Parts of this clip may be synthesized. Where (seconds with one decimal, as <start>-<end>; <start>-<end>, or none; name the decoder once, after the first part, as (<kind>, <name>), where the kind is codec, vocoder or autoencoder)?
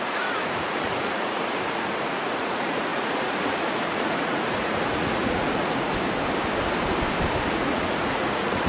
0.0-5.9 (vocoder, Vocos); 7.5-8.7